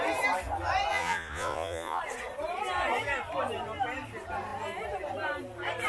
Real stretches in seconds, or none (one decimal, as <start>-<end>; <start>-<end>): 0.0-0.9; 2.0-5.9